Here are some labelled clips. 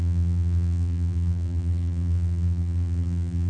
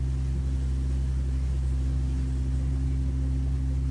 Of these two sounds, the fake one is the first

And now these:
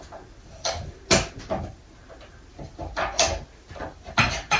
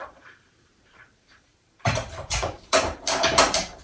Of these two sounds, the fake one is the second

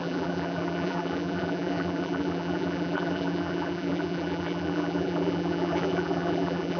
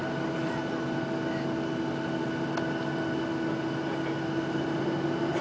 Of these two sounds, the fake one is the first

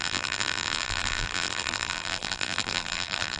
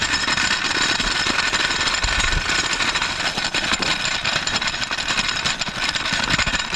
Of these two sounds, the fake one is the first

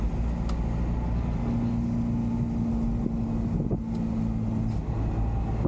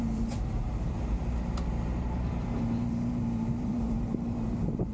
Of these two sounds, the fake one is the second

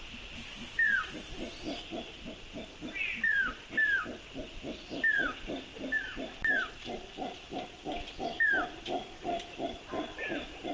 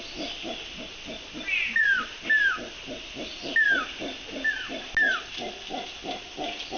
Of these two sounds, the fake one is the first